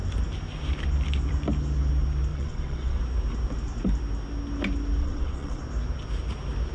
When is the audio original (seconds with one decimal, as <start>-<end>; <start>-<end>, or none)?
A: 0.0-2.3; 3.0-5.0; 5.6-6.7